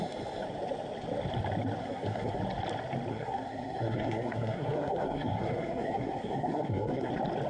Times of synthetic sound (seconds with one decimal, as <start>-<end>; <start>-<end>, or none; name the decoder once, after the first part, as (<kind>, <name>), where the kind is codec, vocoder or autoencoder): 1.8-2.4 (codec, SNAC); 3.1-7.1

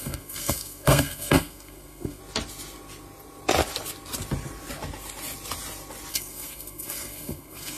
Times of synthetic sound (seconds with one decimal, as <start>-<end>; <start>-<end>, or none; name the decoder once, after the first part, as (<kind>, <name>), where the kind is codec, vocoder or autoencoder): 0.0-2.2 (codec, SNAC); 6.1-7.8

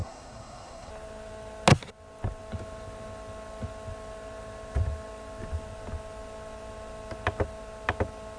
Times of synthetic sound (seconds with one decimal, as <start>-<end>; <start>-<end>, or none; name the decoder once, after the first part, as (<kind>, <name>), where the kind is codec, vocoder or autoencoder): 0.0-0.9 (codec, SNAC)

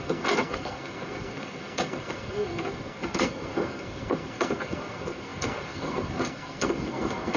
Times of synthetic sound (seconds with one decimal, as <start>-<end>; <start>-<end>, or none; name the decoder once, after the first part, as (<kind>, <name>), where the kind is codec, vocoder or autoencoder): 0.0-7.4 (codec, SNAC)

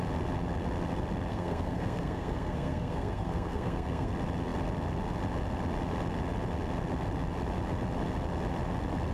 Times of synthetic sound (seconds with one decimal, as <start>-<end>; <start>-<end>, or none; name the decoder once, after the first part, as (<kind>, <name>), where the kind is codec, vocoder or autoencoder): 1.3-4.1 (codec, SNAC)